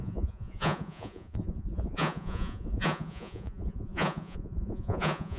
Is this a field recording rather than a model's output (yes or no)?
no